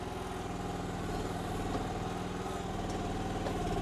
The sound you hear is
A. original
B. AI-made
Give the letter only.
A